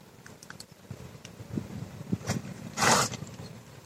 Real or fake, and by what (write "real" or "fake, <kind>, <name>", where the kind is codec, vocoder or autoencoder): fake, vocoder, BigVGAN v2